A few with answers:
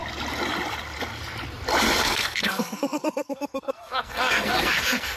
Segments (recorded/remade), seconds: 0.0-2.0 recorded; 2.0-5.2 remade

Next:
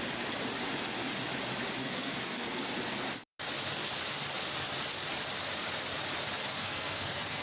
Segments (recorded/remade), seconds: 0.0-1.8 recorded; 1.8-2.7 remade; 2.7-6.5 recorded; 6.5-7.4 remade

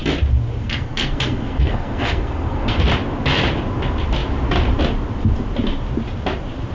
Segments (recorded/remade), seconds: 0.0-0.6 recorded; 0.6-2.8 remade; 2.8-6.7 recorded

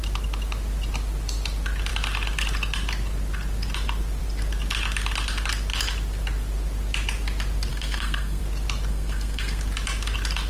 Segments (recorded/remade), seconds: 0.0-7.7 recorded; 7.7-8.4 remade; 8.4-8.9 recorded; 8.9-9.6 remade; 9.6-10.5 recorded